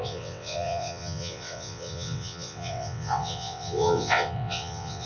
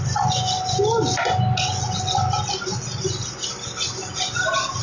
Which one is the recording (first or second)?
second